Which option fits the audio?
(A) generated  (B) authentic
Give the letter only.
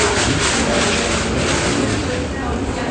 B